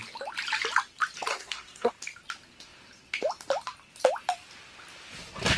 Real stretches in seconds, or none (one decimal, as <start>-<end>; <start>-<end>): 0.0-1.3; 1.9-5.6